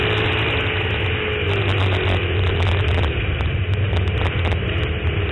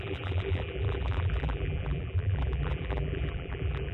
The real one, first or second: first